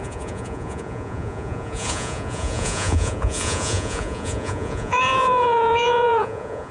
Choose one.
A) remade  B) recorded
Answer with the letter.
A